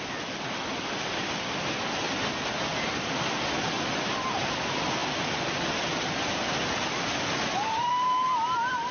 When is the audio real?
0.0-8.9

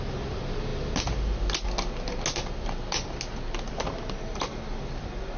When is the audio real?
0.0-5.4